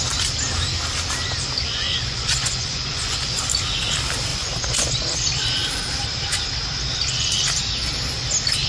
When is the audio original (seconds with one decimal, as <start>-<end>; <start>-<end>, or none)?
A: 0.0-1.7; 3.4-4.3; 4.9-8.7